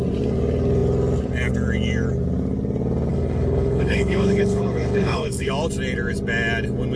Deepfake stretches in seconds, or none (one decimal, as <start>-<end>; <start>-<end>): 3.1-5.5